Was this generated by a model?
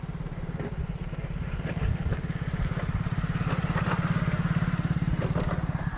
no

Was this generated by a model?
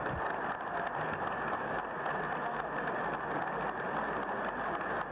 no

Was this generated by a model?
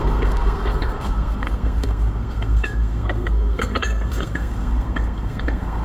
yes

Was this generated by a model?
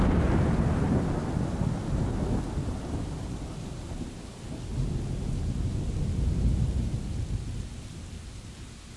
no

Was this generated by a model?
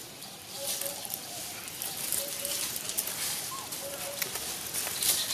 no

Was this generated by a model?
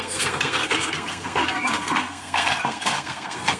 yes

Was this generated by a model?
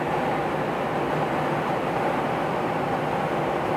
no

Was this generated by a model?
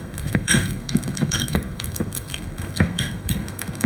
yes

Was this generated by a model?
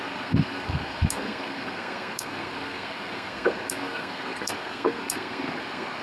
yes